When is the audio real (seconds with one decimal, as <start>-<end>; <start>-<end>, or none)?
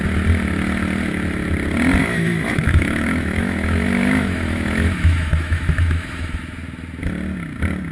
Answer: 0.0-2.0; 6.4-7.9